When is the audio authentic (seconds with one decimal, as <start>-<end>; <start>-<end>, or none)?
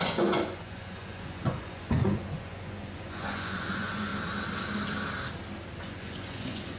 4.1-5.8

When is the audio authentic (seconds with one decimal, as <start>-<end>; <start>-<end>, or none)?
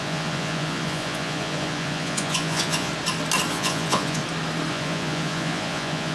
2.9-3.5; 4.2-4.7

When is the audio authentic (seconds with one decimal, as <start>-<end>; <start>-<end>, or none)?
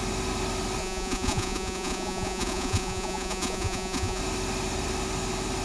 0.0-0.8; 4.2-5.6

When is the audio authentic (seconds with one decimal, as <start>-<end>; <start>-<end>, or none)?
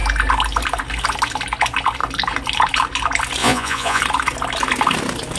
0.0-3.4; 4.0-5.4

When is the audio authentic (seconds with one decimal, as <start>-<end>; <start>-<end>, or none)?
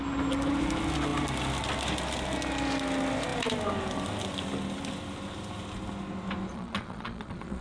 0.0-6.5